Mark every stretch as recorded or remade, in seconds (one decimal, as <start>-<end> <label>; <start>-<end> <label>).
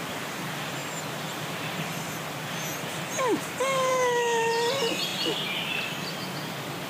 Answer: 0.0-3.9 recorded; 3.9-4.5 remade; 4.5-6.9 recorded